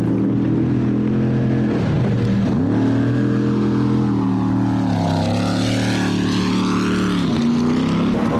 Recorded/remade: recorded